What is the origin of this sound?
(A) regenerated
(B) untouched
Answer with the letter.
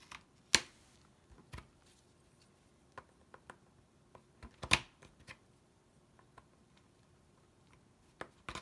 B